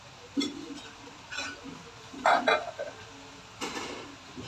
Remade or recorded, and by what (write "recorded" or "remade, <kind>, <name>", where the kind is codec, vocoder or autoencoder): recorded